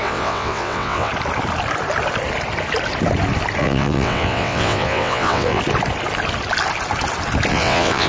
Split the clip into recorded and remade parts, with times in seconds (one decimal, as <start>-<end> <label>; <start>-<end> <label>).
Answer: 0.0-1.1 remade; 1.1-3.6 recorded; 3.6-5.6 remade; 5.6-7.5 recorded; 7.5-8.1 remade